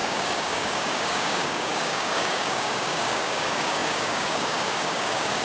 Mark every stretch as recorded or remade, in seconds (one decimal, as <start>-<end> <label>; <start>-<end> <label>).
0.0-5.4 remade